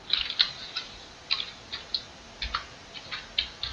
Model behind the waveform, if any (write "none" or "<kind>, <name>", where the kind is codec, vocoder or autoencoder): none